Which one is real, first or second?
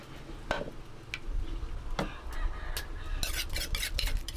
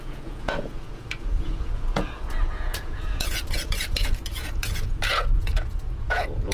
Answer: first